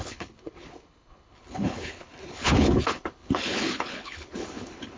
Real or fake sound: fake